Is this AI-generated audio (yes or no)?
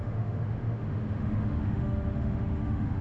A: yes